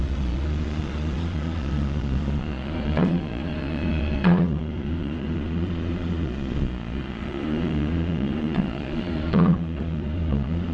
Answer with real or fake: fake